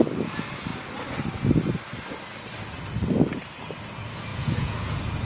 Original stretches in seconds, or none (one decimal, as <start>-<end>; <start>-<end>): 0.0-4.3